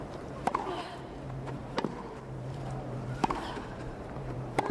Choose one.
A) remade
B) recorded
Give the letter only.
A